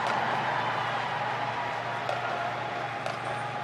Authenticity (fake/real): real